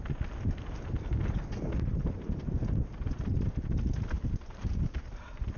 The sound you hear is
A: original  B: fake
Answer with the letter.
A